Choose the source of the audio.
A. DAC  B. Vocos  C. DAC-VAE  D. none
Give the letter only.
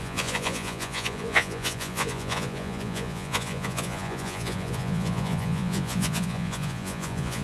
B